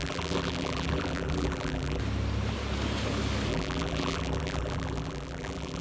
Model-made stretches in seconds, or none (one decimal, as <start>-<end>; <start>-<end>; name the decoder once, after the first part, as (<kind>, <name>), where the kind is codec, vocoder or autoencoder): 0.0-2.0 (vocoder, BigVGAN v2); 3.5-5.8